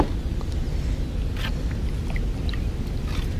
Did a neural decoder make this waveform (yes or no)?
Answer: no